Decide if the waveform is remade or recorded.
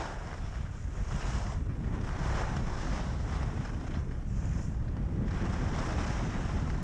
recorded